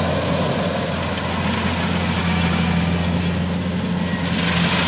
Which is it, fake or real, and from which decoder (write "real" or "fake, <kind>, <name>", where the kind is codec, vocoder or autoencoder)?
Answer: real